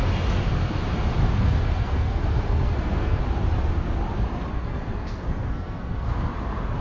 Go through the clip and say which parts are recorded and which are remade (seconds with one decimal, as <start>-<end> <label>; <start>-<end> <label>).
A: 0.0-1.2 recorded; 1.2-3.2 remade; 3.2-4.5 recorded; 4.5-6.3 remade; 6.3-6.8 recorded